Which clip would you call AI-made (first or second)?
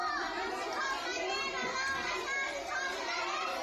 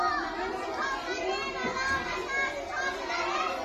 first